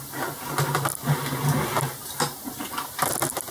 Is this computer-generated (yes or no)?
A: no